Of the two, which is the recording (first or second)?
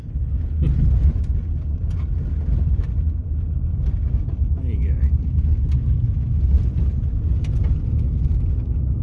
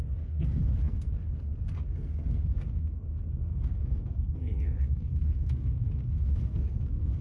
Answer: first